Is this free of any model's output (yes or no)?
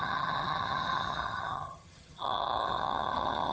no